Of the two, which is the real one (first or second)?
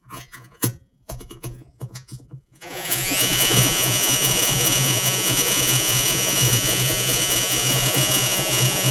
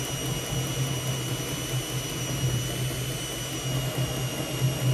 second